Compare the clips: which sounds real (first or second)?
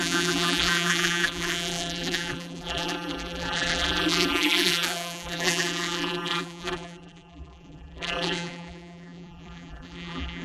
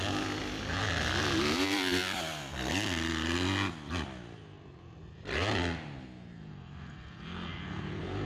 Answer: second